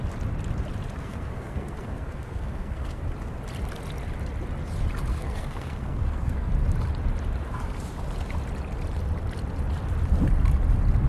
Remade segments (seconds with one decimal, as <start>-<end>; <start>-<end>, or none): 1.0-3.0; 5.1-6.5